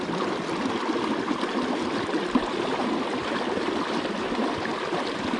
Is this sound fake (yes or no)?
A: no